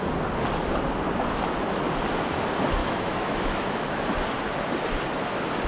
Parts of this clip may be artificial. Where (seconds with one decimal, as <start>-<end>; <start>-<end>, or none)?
2.8-4.0